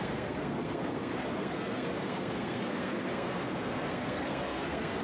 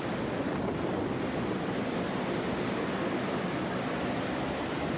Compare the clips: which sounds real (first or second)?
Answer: second